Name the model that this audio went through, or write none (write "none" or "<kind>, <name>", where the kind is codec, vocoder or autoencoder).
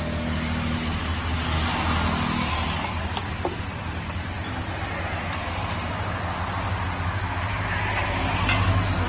none